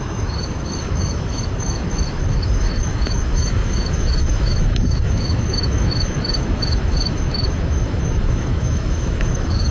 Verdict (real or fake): fake